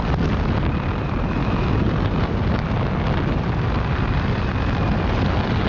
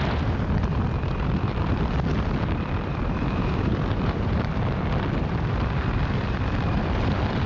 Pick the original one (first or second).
first